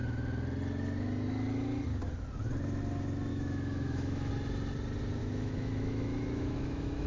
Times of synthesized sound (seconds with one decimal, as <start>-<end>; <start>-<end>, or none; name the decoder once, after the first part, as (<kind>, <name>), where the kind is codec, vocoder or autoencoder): 3.3-4.3 (autoencoder, DAC-VAE); 5.2-7.1